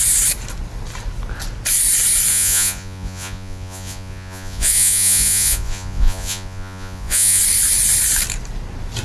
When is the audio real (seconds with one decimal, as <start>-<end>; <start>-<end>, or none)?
0.0-2.3; 7.4-9.0